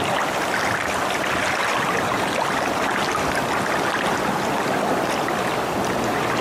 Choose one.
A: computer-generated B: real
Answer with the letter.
B